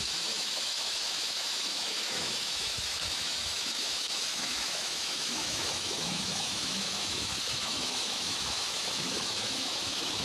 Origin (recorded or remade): remade